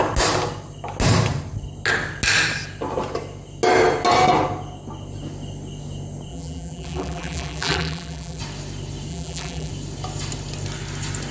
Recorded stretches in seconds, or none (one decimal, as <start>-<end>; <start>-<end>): 0.0-6.3; 8.4-9.1; 9.7-11.3